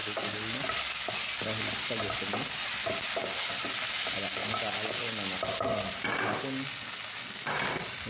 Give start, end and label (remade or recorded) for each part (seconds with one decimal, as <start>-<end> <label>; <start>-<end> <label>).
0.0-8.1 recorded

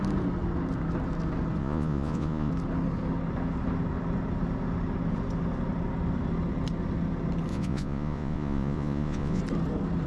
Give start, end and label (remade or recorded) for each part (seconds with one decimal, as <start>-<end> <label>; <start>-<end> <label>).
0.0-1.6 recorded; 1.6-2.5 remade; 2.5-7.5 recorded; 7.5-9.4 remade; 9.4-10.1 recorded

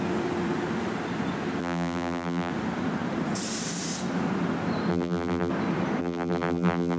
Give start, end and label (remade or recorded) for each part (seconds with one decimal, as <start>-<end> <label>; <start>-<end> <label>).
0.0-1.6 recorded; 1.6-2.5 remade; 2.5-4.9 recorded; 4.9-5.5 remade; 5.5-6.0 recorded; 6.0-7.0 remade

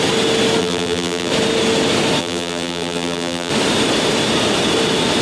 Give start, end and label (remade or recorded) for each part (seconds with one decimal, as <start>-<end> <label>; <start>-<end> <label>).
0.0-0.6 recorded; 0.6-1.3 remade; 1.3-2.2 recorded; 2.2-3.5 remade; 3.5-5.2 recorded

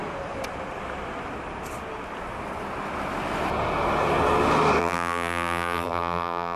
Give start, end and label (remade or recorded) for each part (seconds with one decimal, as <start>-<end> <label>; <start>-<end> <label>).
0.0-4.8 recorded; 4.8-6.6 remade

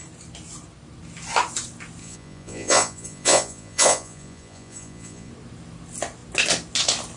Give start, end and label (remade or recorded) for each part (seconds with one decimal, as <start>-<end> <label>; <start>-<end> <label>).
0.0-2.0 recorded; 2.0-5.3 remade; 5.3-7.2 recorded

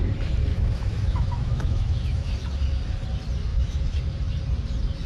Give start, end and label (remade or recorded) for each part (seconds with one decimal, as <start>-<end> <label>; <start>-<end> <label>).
0.0-0.5 recorded; 0.5-2.3 remade; 2.3-3.5 recorded; 3.5-4.0 remade; 4.0-5.1 recorded

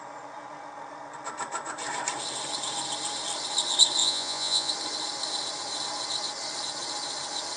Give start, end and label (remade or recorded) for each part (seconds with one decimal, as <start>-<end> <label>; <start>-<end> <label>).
0.0-4.0 recorded; 4.0-4.7 remade; 4.7-7.6 recorded